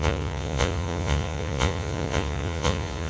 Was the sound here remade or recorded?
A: remade